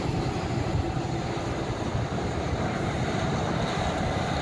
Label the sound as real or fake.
real